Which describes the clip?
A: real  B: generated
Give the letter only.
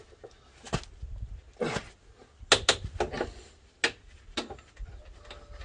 A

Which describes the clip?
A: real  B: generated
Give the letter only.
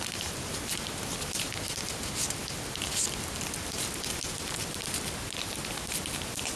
A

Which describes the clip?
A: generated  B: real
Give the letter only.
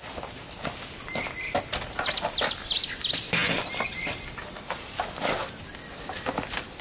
B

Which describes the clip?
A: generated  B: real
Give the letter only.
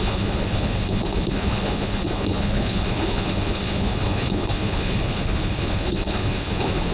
A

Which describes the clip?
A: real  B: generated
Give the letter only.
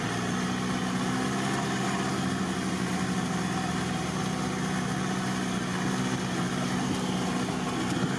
A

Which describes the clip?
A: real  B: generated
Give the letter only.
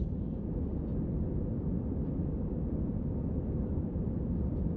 A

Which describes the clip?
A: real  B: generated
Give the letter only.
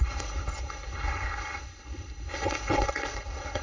B